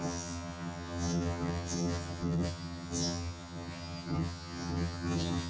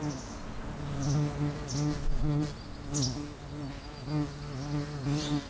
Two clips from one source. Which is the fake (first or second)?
first